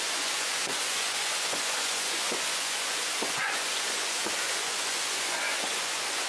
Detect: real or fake fake